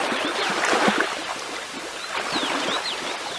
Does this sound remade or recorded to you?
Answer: recorded